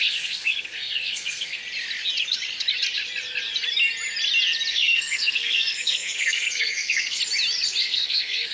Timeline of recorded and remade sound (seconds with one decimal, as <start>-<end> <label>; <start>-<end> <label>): 0.0-1.6 remade; 1.6-4.7 recorded; 4.7-7.2 remade; 7.2-7.8 recorded; 7.8-8.5 remade